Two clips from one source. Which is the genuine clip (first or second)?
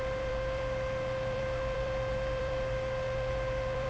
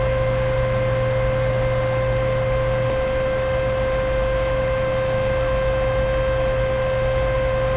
second